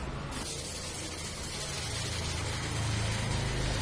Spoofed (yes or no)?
no